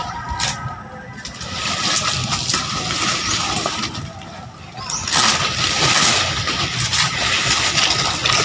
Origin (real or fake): real